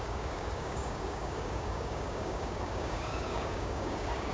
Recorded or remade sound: remade